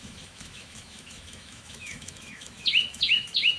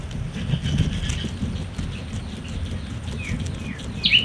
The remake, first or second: first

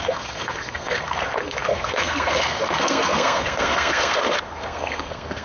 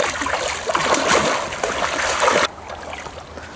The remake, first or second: first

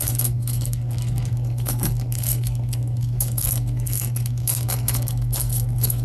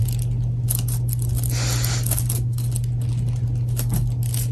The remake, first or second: first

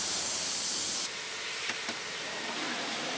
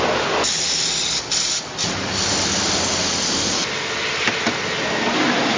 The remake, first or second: first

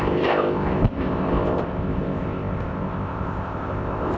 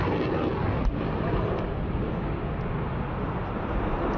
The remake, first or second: first